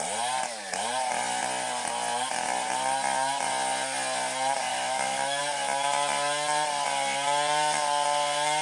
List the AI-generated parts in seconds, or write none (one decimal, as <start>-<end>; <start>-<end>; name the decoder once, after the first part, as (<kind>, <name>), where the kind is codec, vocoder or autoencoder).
4.7-5.4 (autoencoder, DAC-VAE)